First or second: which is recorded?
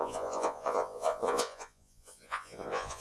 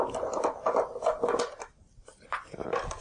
second